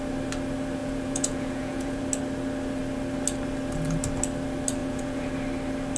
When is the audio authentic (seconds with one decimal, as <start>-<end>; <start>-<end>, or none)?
0.0-0.8; 2.0-4.8; 5.3-6.0